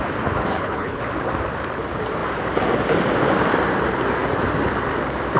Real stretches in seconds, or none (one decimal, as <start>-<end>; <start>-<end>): 0.0-0.5; 1.0-5.4